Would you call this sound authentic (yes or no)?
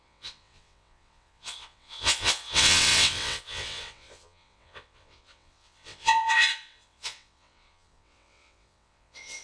no